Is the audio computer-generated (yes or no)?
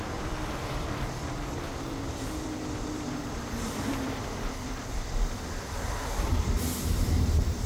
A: yes